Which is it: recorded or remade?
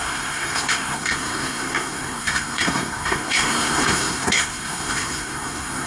remade